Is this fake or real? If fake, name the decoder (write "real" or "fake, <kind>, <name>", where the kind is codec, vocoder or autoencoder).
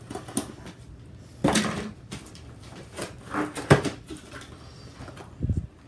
real